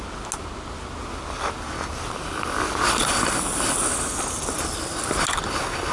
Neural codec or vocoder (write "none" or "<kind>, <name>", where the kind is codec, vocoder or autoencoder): none